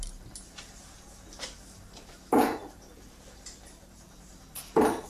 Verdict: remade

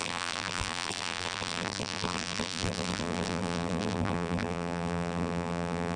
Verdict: remade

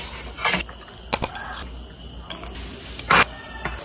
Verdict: recorded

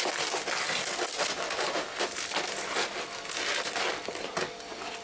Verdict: recorded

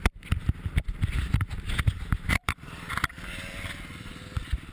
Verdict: remade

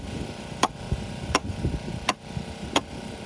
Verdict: remade